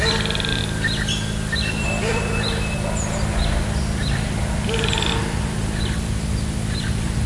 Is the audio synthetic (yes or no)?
no